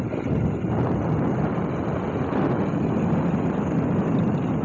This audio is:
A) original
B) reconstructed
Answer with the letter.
A